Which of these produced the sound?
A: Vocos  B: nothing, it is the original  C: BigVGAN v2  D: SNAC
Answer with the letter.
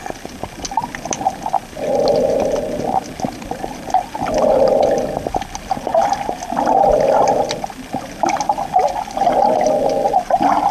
B